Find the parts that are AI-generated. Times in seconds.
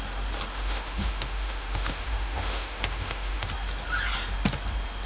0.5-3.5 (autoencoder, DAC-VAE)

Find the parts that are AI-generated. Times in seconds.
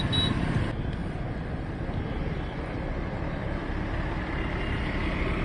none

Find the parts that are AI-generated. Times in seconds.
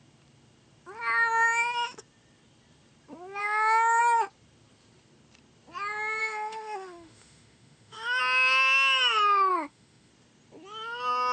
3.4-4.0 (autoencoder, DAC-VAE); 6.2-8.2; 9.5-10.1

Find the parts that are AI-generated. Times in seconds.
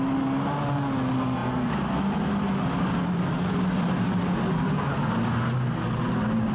none